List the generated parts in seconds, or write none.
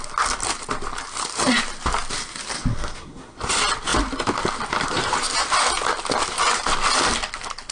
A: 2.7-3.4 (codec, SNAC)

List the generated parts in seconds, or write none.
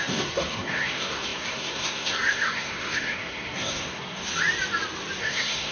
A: 0.0-4.2 (codec, SNAC); 5.2-5.7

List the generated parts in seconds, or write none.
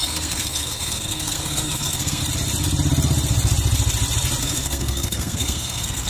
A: 0.0-2.2 (codec, SNAC); 4.4-6.1